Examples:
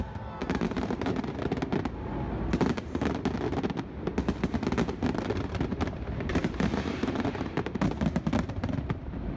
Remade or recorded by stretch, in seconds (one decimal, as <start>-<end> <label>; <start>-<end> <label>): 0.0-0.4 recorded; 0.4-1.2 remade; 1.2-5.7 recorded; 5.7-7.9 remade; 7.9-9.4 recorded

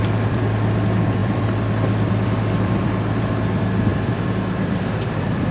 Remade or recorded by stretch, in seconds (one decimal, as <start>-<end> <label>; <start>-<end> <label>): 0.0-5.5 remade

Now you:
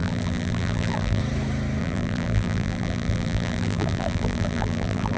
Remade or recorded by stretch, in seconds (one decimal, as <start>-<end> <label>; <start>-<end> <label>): 0.0-1.2 remade; 1.2-1.8 recorded; 1.8-5.2 remade

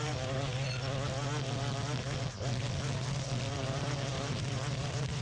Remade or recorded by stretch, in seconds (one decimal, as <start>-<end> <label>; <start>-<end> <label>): 0.0-0.5 remade; 0.5-3.6 recorded; 3.6-5.2 remade

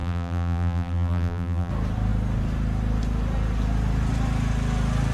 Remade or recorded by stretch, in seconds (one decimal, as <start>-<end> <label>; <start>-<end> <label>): 0.0-1.7 remade; 1.7-5.1 recorded

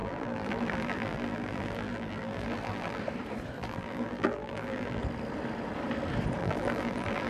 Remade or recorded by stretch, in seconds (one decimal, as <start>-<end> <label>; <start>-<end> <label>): 0.0-3.0 remade; 3.0-3.6 recorded; 3.6-5.0 remade; 5.0-6.4 recorded; 6.4-7.3 remade

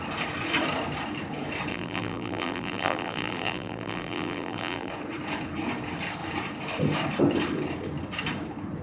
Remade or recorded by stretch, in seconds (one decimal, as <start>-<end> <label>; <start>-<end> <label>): 0.0-1.7 recorded; 1.7-4.9 remade; 4.9-8.8 recorded